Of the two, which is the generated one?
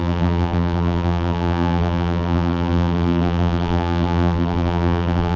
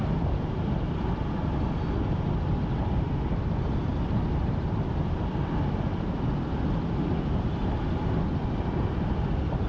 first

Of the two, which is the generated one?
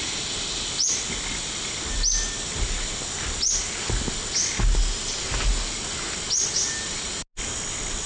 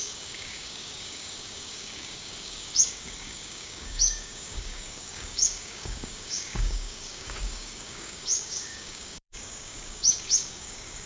second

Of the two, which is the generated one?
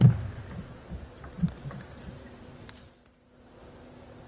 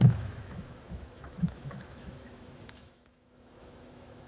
second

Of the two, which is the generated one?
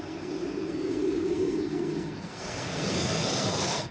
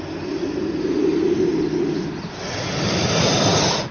first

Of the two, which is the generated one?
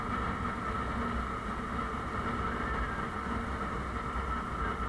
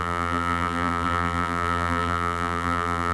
second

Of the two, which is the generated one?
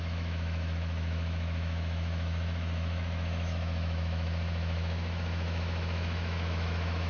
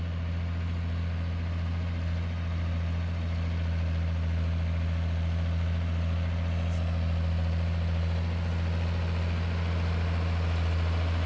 first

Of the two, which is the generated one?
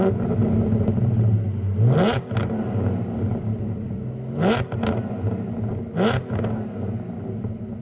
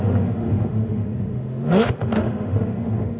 second